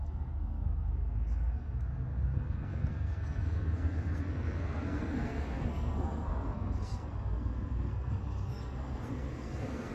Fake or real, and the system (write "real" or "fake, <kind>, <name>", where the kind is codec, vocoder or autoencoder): fake, codec, SNAC